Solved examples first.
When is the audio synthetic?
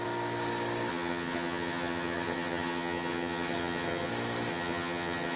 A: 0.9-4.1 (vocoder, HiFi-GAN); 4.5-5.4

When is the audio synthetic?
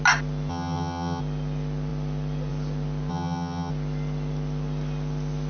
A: 0.5-1.2 (vocoder, HiFi-GAN); 3.1-3.7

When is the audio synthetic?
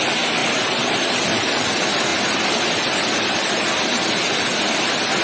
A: none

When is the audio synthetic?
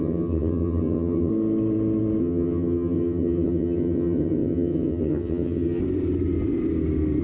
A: 0.0-1.3 (vocoder, HiFi-GAN); 2.2-5.8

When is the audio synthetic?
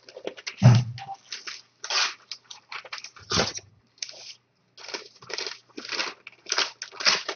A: 3.2-3.8 (vocoder, HiFi-GAN)